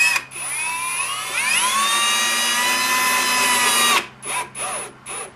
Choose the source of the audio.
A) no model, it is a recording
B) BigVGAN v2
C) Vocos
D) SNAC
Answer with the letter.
A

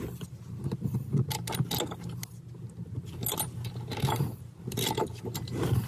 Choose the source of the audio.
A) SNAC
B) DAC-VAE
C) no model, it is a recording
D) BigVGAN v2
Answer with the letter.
C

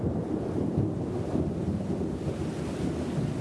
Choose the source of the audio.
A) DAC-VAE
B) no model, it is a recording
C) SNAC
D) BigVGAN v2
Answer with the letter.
B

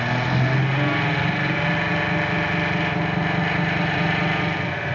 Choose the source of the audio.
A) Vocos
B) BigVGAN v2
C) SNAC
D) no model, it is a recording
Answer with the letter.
D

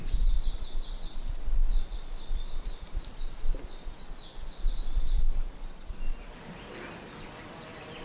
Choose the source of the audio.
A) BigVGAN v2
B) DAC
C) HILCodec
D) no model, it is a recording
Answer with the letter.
A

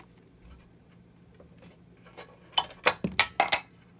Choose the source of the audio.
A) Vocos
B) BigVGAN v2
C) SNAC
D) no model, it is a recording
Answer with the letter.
D